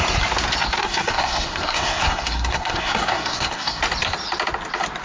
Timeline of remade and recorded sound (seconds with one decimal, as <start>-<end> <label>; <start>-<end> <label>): 0.0-0.8 recorded; 0.8-3.8 remade; 3.8-5.0 recorded